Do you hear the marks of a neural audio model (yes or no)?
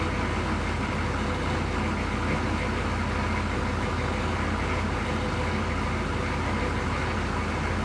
no